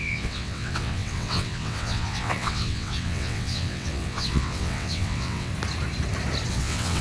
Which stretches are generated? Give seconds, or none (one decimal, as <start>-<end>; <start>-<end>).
0.0-5.5; 6.5-7.0